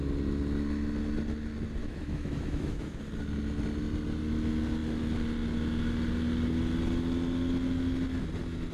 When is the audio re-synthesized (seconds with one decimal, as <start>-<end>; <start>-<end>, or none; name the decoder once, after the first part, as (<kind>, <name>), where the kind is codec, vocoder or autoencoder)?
1.8-3.0 (autoencoder, DAC-VAE)